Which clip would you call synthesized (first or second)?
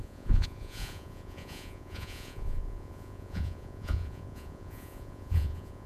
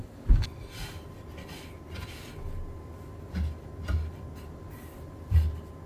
first